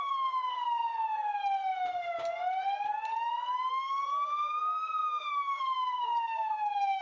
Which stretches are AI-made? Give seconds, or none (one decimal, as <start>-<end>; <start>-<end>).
0.0-0.8; 3.7-7.0